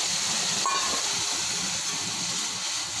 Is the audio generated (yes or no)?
no